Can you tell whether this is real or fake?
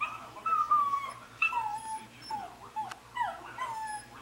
fake